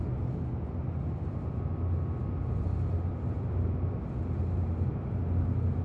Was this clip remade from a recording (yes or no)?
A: no